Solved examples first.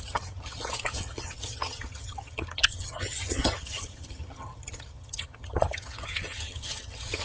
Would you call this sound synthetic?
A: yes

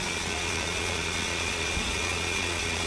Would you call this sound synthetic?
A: yes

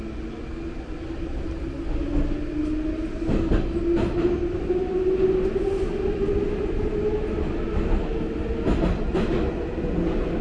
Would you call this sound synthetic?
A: no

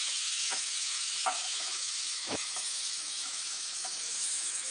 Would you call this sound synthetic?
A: yes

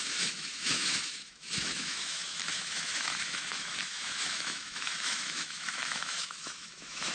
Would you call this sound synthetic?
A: yes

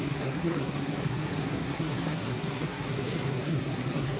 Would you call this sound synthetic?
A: yes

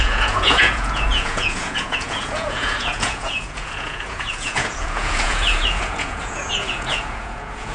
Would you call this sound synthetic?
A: yes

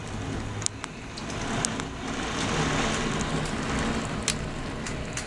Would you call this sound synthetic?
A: no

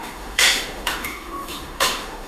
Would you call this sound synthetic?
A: yes